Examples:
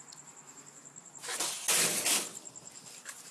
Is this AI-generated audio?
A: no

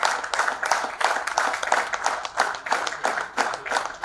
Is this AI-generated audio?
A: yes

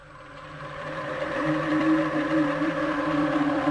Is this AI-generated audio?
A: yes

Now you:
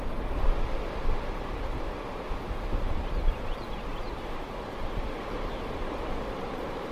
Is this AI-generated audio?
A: yes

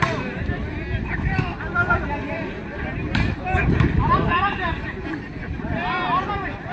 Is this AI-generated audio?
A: yes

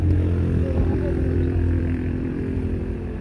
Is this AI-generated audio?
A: yes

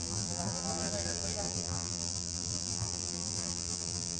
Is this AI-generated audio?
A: yes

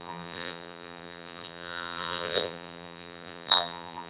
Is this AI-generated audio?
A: yes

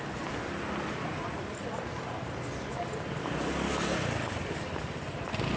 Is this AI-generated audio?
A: no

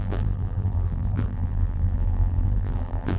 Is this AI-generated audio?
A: yes